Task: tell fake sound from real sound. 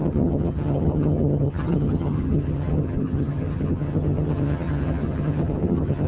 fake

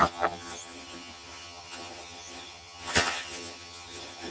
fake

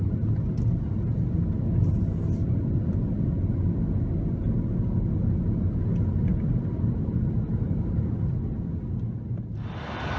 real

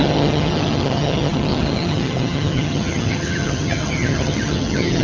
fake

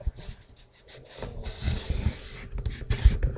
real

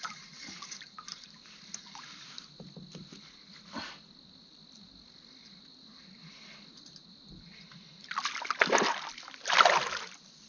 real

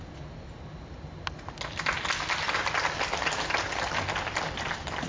real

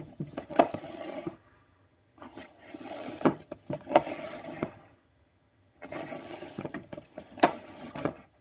fake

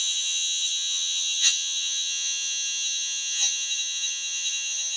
fake